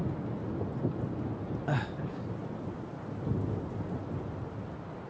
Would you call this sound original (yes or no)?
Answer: yes